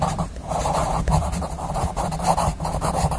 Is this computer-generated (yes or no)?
yes